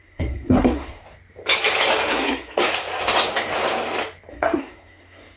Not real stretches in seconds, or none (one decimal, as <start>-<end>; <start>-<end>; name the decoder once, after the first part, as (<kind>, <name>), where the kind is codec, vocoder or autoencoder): 0.0-1.0 (codec, SNAC); 2.1-2.7; 4.3-5.4